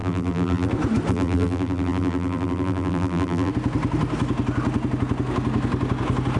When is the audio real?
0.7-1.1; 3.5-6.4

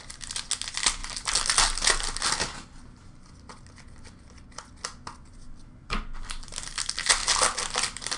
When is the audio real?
0.0-8.2